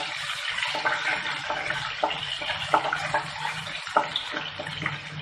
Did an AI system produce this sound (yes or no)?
no